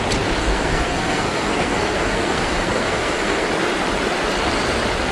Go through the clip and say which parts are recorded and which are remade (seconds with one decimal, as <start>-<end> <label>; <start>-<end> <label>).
0.0-0.4 recorded; 0.4-3.5 remade; 3.5-5.1 recorded